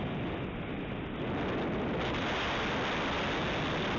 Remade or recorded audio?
recorded